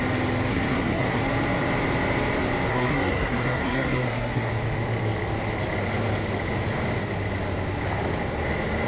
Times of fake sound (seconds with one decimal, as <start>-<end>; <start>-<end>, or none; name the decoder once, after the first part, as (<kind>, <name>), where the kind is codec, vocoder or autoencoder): 0.5-1.2 (codec, SNAC); 2.7-4.5